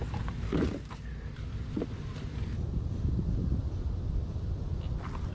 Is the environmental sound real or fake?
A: real